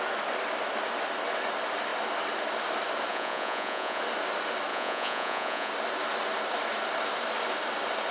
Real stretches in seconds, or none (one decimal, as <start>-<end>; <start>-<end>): 0.0-3.1; 4.0-4.7; 5.7-8.1